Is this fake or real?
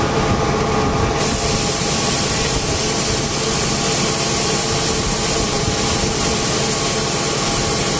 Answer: real